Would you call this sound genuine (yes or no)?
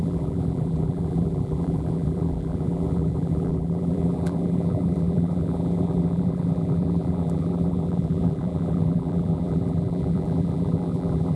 no